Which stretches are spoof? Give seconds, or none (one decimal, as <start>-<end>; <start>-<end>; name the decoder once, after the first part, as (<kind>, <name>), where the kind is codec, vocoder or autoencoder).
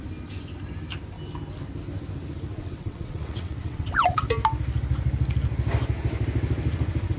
2.5-4.2 (vocoder, WaveNeXt)